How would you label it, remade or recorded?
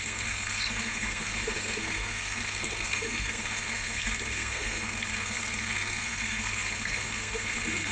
remade